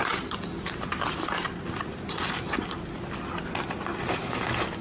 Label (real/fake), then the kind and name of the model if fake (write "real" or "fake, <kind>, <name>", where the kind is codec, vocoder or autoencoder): real